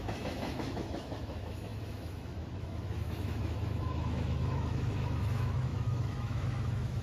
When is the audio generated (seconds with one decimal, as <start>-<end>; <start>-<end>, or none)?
0.0-7.0

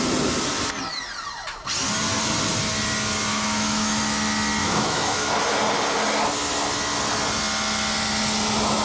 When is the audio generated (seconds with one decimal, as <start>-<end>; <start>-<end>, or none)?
3.3-4.0; 4.6-5.3